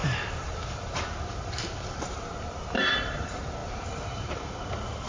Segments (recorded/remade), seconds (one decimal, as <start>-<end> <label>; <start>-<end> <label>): 0.0-5.1 remade